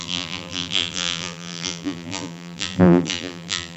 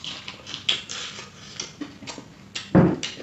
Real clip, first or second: second